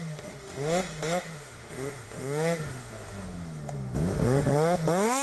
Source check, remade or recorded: remade